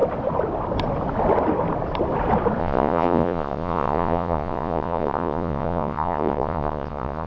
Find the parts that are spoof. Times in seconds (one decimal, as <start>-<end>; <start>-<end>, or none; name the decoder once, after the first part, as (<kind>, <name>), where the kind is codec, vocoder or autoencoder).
2.6-7.3 (vocoder, Vocos)